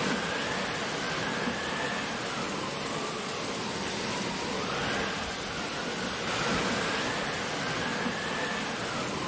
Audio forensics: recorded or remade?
recorded